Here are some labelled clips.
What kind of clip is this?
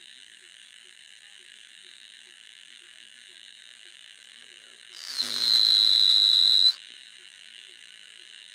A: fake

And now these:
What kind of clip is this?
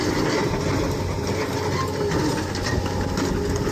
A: real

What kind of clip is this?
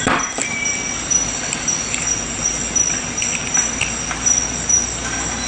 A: real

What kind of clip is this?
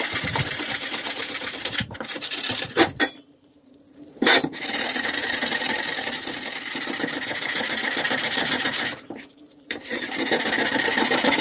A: fake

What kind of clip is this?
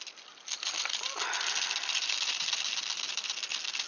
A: real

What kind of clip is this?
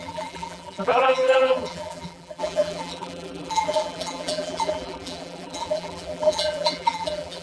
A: fake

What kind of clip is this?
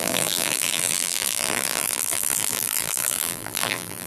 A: fake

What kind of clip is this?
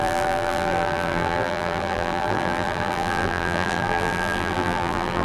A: fake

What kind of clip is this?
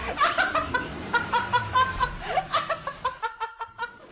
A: fake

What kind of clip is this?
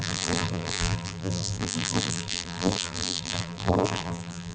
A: fake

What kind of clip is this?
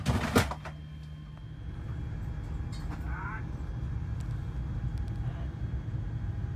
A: real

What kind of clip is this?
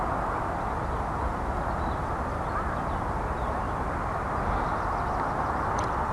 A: real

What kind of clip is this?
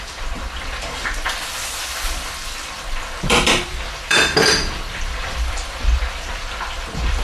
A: fake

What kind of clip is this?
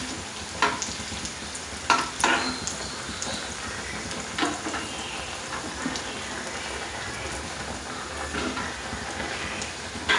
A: real